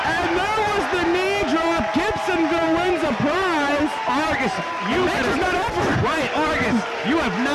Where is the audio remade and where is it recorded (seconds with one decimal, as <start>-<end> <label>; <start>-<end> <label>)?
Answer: 0.0-7.5 recorded